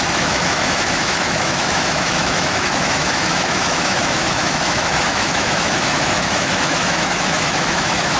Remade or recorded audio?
remade